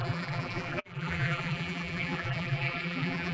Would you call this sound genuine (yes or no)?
no